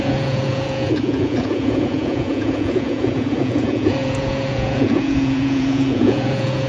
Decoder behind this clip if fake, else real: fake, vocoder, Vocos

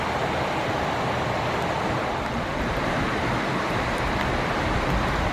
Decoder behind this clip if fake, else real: real